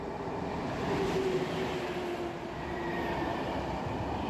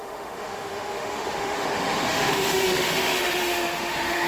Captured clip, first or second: first